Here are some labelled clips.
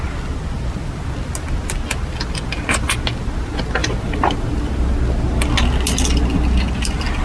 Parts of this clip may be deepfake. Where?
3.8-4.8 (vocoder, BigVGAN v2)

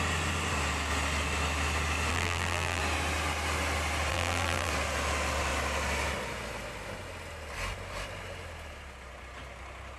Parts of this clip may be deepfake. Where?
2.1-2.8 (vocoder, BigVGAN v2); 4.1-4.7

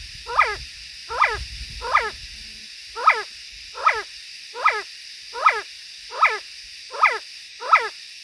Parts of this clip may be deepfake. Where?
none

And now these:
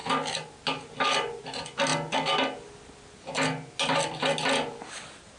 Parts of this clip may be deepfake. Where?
none